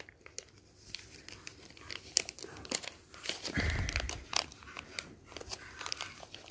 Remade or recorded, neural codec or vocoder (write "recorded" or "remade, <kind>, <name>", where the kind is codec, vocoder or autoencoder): remade, vocoder, BigVGAN v2